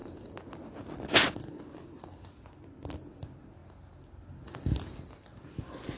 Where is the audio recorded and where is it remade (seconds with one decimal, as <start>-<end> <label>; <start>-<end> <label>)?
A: 0.0-6.0 recorded